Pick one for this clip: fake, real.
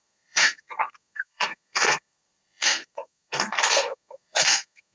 fake